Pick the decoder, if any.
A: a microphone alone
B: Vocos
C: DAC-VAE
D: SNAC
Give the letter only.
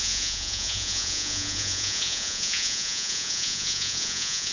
B